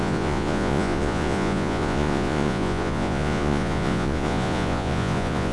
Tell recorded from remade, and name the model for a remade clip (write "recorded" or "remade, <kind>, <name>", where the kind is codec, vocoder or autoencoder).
remade, vocoder, Vocos